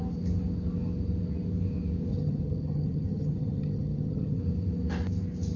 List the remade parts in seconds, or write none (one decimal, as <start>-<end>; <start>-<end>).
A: 2.1-4.4